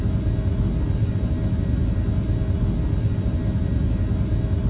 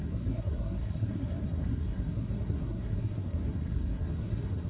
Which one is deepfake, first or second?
second